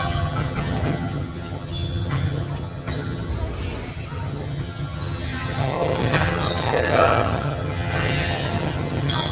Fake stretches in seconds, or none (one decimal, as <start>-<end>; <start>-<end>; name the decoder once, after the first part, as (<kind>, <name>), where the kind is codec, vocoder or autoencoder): 0.0-3.3 (vocoder, HiFi-GAN); 3.9-9.3